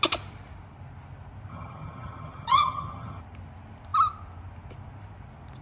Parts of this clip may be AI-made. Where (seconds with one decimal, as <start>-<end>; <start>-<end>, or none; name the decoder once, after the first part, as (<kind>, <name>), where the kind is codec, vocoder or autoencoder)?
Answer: 1.5-3.2 (vocoder, HiFi-GAN)